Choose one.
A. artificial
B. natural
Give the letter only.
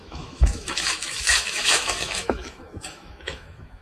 A